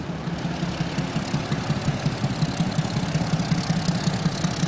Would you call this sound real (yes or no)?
no